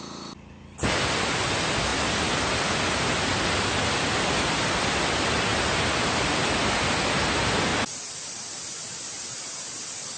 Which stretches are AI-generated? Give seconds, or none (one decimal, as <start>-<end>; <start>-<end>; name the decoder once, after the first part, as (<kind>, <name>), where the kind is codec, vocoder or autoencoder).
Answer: none